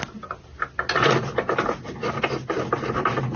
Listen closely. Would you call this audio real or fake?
real